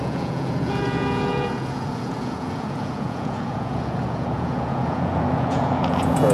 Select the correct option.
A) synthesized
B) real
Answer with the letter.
A